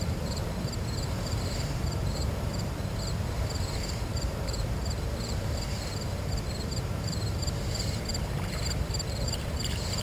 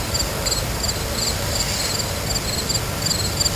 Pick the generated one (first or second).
first